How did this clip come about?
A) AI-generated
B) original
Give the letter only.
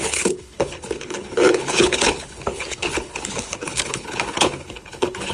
A